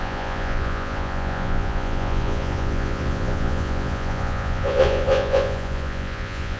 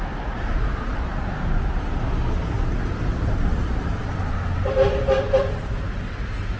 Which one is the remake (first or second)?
first